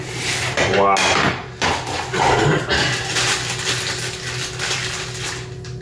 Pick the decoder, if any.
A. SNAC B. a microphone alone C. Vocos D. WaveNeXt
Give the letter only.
B